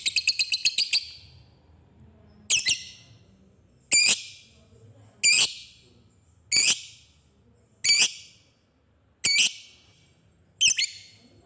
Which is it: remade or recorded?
recorded